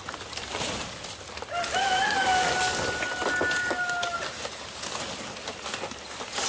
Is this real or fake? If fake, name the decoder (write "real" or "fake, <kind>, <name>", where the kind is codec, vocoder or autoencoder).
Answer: real